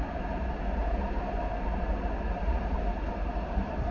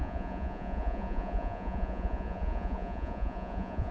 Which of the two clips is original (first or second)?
first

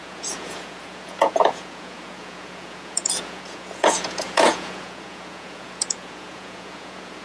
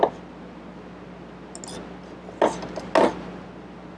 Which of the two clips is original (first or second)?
second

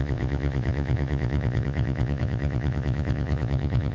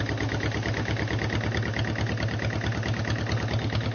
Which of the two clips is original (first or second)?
second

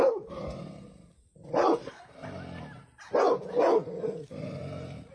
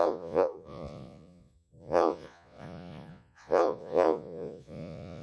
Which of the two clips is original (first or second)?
first